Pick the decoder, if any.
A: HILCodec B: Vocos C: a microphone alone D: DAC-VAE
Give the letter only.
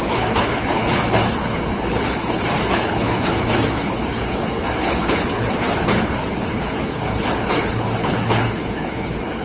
A